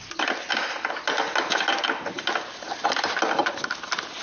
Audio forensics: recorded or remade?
recorded